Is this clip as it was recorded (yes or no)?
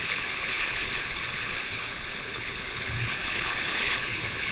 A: no